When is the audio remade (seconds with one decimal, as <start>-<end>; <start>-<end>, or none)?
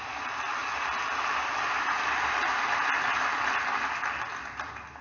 0.6-3.6